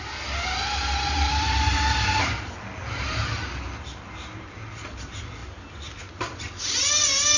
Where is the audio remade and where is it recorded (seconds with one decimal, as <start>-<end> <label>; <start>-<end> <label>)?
0.0-7.4 recorded